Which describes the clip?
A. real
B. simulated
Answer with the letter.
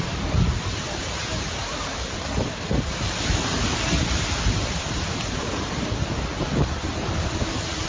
A